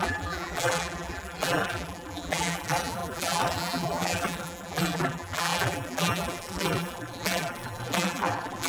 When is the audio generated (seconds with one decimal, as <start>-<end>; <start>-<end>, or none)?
0.0-8.7